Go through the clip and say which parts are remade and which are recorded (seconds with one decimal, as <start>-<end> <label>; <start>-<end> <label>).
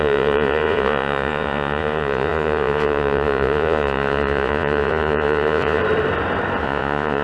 0.0-5.8 remade; 5.8-6.6 recorded; 6.6-7.2 remade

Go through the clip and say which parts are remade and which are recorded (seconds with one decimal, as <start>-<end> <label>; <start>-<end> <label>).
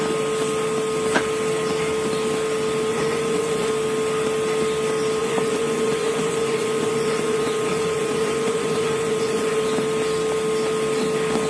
0.0-2.9 recorded; 2.9-3.7 remade; 3.7-5.2 recorded; 5.2-9.6 remade; 9.6-11.5 recorded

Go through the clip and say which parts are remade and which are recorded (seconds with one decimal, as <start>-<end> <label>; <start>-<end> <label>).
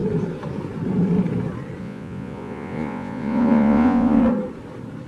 0.0-1.8 recorded; 1.8-4.2 remade; 4.2-5.1 recorded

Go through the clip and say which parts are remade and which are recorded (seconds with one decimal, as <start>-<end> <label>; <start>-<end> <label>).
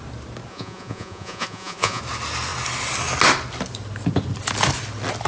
0.0-0.5 recorded; 0.5-2.0 remade; 2.0-5.3 recorded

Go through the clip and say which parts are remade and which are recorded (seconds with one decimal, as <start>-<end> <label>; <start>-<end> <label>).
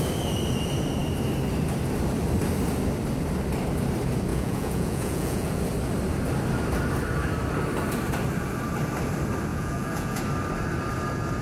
0.0-4.3 recorded; 4.3-5.6 remade; 5.6-9.5 recorded; 9.5-10.2 remade; 10.2-11.4 recorded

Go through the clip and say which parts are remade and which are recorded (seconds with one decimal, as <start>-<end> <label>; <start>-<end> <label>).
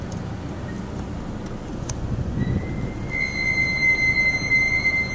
0.0-1.7 recorded; 1.7-2.6 remade; 2.6-5.1 recorded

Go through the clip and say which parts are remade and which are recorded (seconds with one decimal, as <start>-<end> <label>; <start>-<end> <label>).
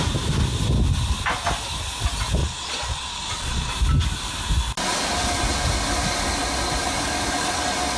0.0-2.4 recorded; 2.4-3.7 remade; 3.7-8.0 recorded